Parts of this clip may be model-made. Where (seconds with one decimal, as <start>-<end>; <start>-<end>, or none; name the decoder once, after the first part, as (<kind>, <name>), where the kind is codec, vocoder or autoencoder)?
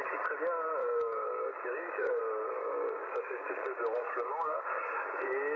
0.8-2.2 (codec, DAC); 2.6-4.8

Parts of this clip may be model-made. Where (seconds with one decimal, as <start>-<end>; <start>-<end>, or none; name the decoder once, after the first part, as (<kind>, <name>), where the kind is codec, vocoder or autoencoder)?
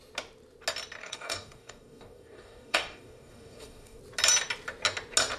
1.0-4.0 (codec, DAC)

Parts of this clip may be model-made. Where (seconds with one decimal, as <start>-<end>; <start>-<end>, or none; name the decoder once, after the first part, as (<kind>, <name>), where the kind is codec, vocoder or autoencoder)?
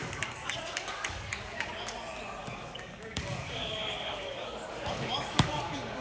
0.0-1.7 (codec, DAC); 2.4-6.0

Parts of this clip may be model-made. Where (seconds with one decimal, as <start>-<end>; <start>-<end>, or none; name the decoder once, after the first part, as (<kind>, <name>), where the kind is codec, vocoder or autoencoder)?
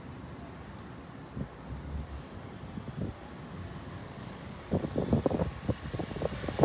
4.0-4.8 (codec, DAC)